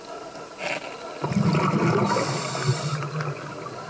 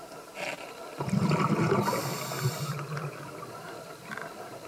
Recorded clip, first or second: first